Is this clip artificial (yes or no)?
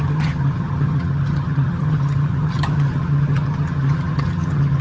yes